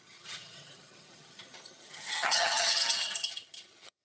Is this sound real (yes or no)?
no